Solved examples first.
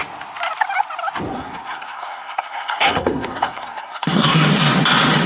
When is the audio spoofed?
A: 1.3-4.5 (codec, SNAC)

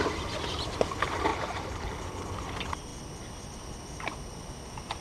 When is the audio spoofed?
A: 1.3-1.9 (vocoder, BigVGAN v2)